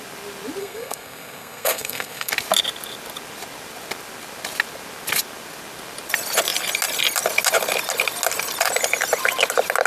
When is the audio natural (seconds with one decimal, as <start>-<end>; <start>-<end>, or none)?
0.0-0.6; 2.3-9.9